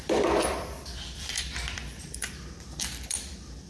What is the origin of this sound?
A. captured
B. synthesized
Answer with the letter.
B